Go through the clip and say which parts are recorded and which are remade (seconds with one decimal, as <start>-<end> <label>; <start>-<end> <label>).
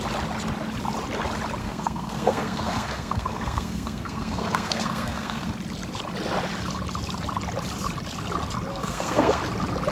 0.0-1.6 recorded; 1.6-5.5 remade; 5.5-8.7 recorded; 8.7-9.4 remade; 9.4-9.9 recorded